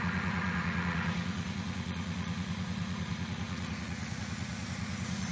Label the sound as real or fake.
fake